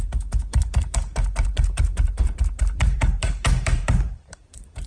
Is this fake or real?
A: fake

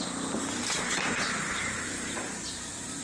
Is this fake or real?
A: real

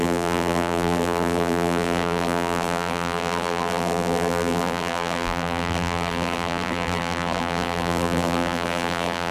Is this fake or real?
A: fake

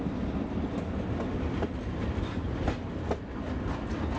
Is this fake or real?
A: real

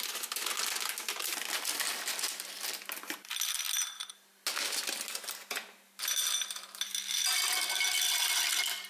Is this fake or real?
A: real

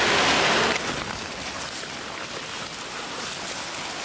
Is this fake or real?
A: real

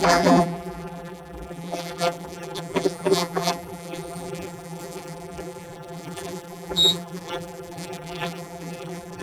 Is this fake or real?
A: fake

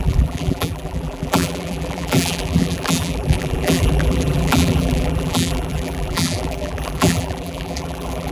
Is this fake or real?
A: fake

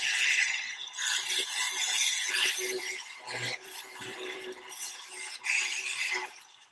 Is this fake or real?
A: fake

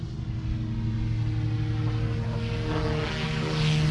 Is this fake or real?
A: real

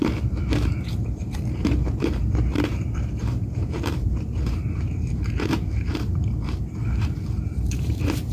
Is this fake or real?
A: fake